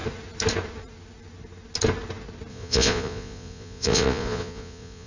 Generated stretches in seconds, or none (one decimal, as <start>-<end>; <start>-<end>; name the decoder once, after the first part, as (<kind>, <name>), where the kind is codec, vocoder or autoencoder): 2.5-5.1 (vocoder, Vocos)